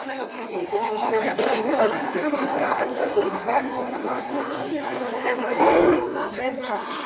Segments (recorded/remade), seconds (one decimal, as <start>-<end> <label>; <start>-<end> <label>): 0.0-7.1 remade